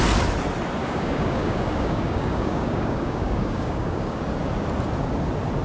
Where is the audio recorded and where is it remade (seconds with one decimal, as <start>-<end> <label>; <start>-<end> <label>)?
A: 0.0-0.8 recorded; 0.8-4.2 remade; 4.2-5.6 recorded